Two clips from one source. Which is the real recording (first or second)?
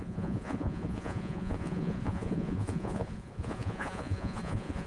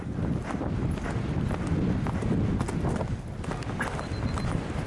second